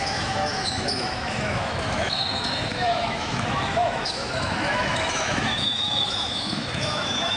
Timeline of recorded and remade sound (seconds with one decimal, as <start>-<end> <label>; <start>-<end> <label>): 0.0-7.4 remade